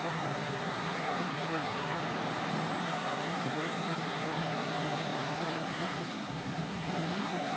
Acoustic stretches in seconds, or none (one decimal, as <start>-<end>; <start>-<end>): 2.0-2.8